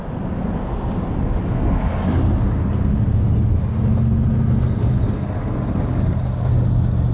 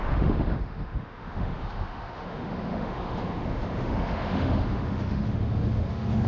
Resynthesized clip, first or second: second